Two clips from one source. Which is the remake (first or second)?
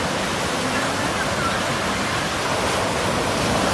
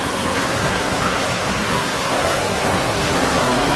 second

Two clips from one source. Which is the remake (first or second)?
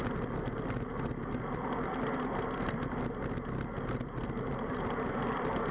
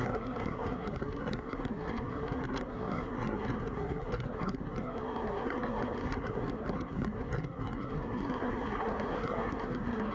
second